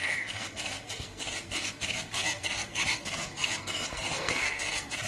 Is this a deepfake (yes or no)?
yes